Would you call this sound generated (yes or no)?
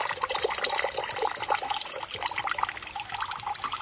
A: no